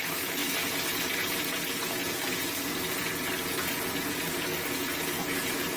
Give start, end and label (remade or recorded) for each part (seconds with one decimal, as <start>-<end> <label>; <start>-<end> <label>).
0.0-5.8 remade